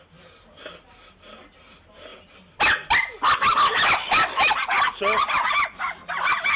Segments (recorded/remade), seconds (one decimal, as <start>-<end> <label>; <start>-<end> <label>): 0.0-6.6 recorded